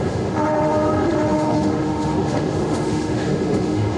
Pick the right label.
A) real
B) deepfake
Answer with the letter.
B